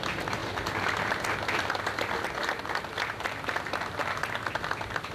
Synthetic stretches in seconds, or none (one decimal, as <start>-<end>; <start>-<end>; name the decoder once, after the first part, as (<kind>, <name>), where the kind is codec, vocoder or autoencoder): none